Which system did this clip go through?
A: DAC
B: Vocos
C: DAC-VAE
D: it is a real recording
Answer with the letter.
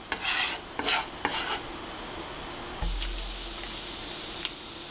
D